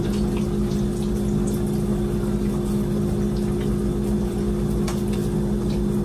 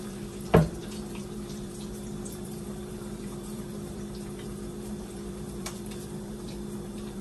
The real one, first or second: first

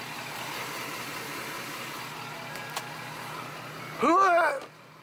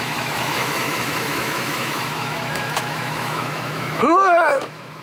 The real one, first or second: first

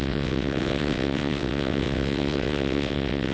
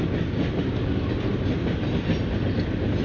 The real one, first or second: second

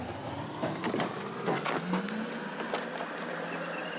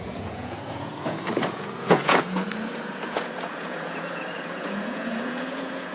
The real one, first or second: first